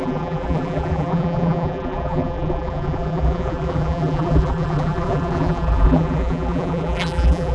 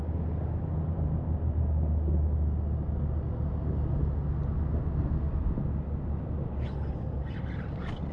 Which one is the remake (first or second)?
first